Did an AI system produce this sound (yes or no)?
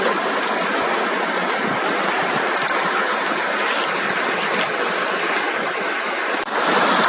no